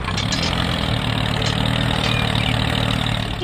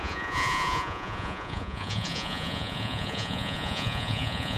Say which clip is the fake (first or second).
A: second